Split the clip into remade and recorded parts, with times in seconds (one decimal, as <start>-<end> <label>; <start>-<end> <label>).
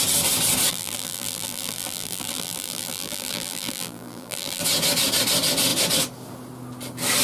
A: 0.0-0.7 recorded; 0.7-4.6 remade; 4.6-7.2 recorded